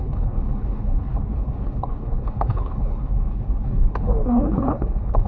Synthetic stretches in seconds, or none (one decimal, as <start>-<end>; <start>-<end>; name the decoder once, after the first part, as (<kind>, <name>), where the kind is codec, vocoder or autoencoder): 0.0-5.3 (codec, HILCodec)